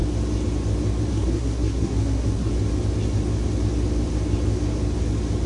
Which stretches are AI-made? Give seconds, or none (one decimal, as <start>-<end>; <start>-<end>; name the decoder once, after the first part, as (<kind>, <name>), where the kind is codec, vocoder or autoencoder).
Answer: 1.1-2.5 (codec, SNAC)